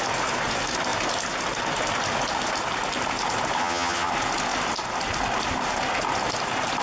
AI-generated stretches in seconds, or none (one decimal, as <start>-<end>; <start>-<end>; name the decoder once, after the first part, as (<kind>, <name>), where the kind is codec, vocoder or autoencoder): 3.6-4.1 (vocoder, HiFi-GAN)